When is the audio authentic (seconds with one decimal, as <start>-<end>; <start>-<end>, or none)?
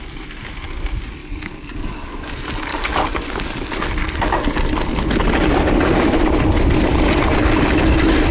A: 0.0-1.2; 2.3-2.7; 3.7-8.3